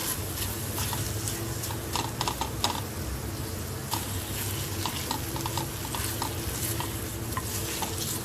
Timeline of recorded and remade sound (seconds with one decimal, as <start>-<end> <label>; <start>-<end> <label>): 0.0-8.2 recorded